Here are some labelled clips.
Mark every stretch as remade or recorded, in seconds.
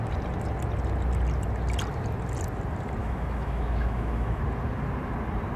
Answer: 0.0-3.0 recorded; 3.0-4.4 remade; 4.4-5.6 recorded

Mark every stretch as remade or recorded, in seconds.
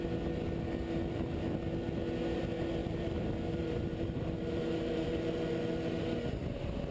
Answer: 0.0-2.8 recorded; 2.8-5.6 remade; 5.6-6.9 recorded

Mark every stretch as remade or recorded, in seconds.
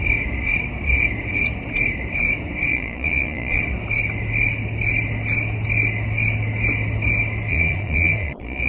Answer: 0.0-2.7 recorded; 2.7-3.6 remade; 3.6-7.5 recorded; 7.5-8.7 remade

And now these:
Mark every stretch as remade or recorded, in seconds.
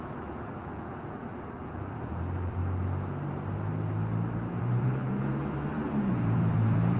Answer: 0.0-2.6 remade; 2.6-4.6 recorded; 4.6-7.0 remade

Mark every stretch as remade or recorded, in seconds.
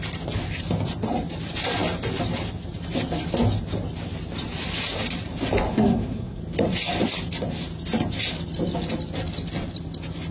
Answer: 0.0-5.7 recorded; 5.7-6.4 remade; 6.4-10.3 recorded